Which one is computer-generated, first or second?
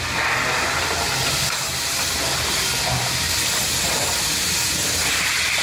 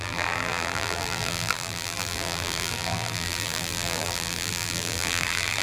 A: second